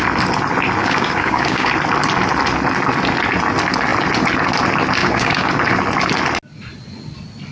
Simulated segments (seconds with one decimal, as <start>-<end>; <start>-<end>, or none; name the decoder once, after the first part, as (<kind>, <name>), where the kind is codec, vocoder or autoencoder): 0.8-1.7 (codec, DAC); 5.0-5.5

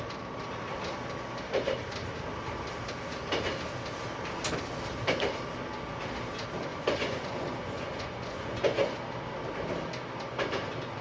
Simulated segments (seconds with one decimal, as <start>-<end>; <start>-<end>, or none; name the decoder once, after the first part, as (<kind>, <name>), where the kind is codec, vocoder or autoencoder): 6.7-9.0 (vocoder, Vocos)

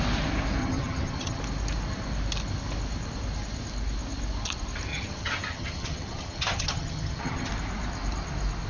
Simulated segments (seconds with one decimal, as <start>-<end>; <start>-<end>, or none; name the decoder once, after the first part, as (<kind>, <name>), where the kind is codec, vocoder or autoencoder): 0.6-1.4 (vocoder, HiFi-GAN); 4.9-7.5

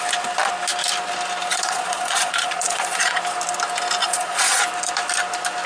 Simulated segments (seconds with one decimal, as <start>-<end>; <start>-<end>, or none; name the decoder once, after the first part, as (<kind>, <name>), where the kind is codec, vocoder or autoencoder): 1.5-3.2 (vocoder, Vocos); 4.0-4.6